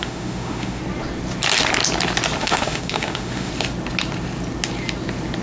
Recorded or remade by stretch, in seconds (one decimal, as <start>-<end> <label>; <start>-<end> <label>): 0.0-0.8 remade; 0.8-2.4 recorded; 2.4-3.5 remade; 3.5-5.4 recorded